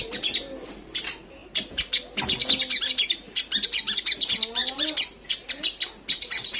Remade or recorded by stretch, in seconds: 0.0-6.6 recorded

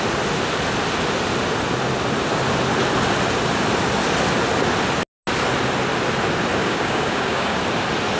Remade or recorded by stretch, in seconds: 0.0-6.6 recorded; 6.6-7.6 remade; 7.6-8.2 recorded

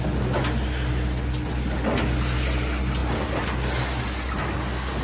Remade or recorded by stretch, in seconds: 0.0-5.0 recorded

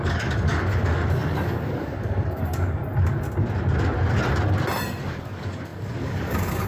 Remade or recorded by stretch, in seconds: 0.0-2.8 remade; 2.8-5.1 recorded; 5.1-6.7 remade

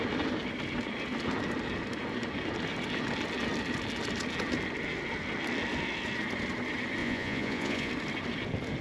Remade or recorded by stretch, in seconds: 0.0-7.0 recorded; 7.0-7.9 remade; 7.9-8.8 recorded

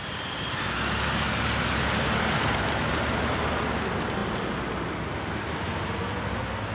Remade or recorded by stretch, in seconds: 0.0-0.6 remade; 0.6-2.9 recorded; 2.9-3.4 remade; 3.4-6.7 recorded

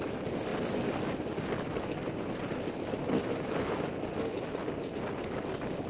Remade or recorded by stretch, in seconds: 0.0-5.9 recorded

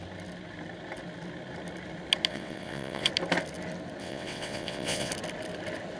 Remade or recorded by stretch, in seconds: 0.0-2.3 recorded; 2.3-3.1 remade; 3.1-4.0 recorded; 4.0-5.1 remade; 5.1-6.0 recorded